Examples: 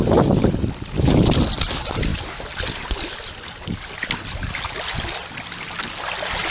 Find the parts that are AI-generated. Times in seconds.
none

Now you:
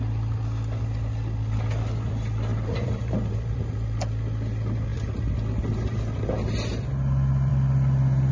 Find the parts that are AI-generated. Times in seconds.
2.5-3.6 (vocoder, BigVGAN v2)

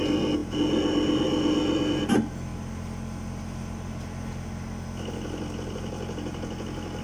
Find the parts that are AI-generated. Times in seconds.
none

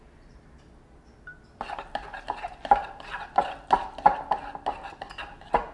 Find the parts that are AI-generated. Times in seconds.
1.3-3.5 (vocoder, BigVGAN v2)